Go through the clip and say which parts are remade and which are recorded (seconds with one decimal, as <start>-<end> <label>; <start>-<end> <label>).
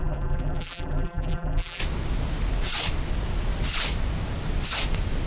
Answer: 0.0-1.8 remade; 1.8-5.3 recorded